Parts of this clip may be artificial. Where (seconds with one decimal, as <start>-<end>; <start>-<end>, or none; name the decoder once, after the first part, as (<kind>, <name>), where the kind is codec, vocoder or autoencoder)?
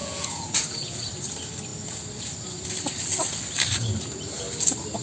0.0-1.1 (vocoder, Vocos)